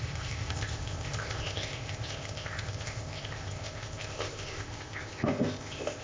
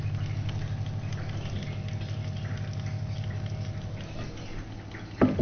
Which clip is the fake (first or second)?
first